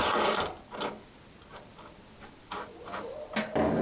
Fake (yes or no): no